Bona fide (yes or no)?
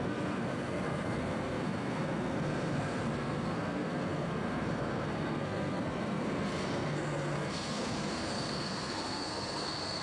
no